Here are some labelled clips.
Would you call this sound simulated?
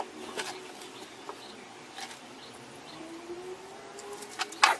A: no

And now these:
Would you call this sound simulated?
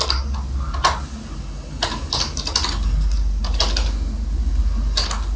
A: no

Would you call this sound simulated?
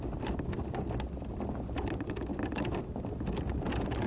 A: no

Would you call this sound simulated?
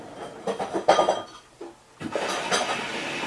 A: no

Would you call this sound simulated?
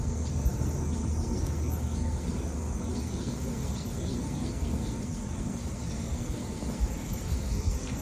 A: yes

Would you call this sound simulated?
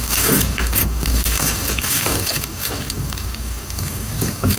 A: yes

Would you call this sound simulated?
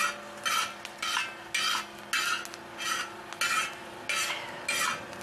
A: no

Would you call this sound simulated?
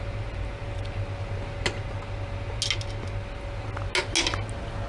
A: no